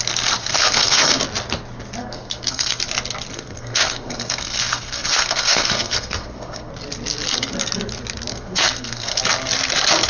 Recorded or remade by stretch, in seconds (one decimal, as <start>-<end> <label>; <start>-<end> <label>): 0.0-0.4 recorded; 0.4-1.2 remade; 1.2-2.0 recorded; 2.0-2.7 remade; 2.7-3.3 recorded; 3.3-6.7 remade; 6.7-8.3 recorded; 8.3-9.2 remade; 9.2-10.1 recorded